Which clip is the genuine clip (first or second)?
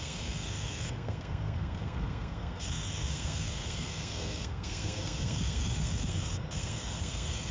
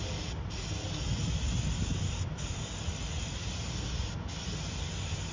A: second